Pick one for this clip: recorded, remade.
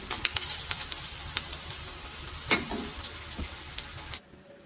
remade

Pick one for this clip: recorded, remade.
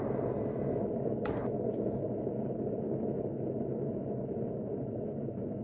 recorded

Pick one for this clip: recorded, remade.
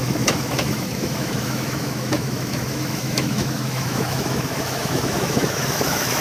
remade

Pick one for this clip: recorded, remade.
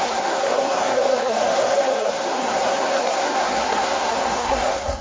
remade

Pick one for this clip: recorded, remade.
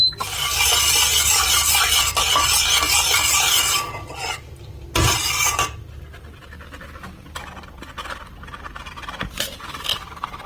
recorded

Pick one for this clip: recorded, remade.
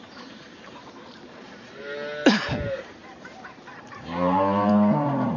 remade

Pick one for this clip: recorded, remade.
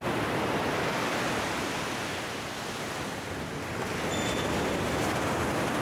recorded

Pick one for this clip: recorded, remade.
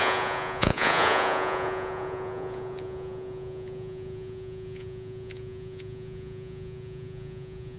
remade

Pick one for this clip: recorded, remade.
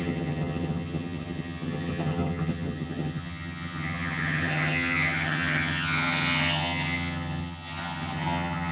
remade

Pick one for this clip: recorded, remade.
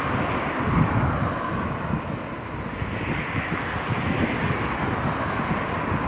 recorded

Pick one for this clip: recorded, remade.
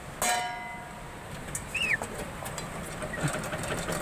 recorded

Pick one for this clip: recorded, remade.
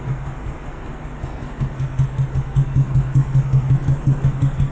remade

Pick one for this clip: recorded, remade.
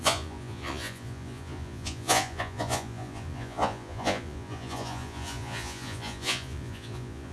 remade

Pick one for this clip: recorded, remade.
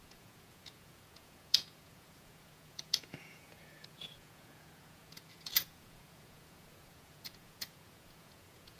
remade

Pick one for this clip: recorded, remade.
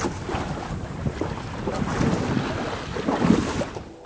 recorded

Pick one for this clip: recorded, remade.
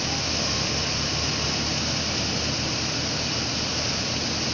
recorded